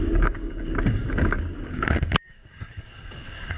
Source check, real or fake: fake